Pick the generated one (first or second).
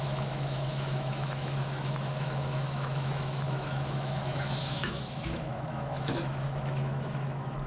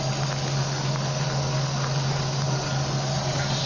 first